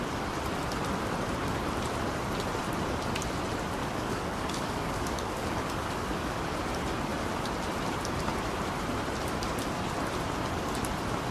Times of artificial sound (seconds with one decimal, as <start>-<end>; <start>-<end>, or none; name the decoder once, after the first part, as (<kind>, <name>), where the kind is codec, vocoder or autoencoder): 3.8-6.4 (codec, DAC)